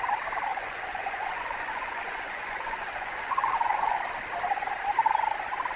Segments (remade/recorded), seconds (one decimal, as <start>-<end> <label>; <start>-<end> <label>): 0.0-0.5 recorded; 0.5-4.0 remade; 4.0-5.8 recorded

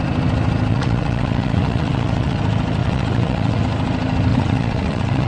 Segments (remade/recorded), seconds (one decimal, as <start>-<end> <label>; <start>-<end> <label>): 0.0-0.7 recorded; 0.7-2.4 remade; 2.4-2.8 recorded; 2.8-3.6 remade; 3.6-4.3 recorded; 4.3-5.3 remade

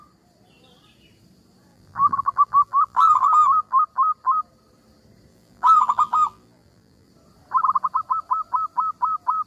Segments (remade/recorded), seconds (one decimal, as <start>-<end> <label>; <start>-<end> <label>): 0.0-1.7 recorded; 1.7-3.8 remade; 3.8-5.3 recorded; 5.3-7.1 remade; 7.1-9.5 recorded

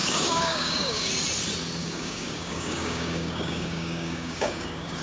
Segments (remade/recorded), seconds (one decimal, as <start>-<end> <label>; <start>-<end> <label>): 0.0-1.1 remade; 1.1-1.8 recorded; 1.8-5.0 remade

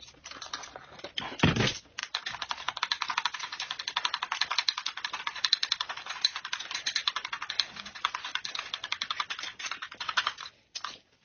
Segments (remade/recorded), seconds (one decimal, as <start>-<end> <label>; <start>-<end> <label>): 0.0-11.2 recorded

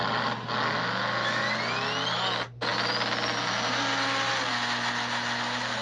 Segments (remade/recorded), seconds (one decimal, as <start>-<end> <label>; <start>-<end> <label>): 0.0-5.8 recorded

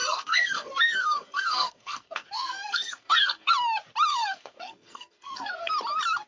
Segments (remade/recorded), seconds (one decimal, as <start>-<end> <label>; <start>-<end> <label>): 0.0-3.5 remade; 3.5-4.1 recorded; 4.1-5.7 remade; 5.7-6.3 recorded